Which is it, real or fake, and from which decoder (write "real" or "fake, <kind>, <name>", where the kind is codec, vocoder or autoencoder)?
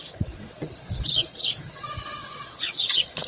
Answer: fake, vocoder, Vocos